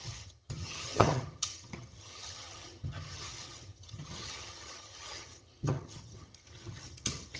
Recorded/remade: remade